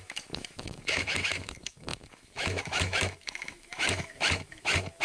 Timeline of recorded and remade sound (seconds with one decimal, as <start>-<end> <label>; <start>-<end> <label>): 0.0-5.0 remade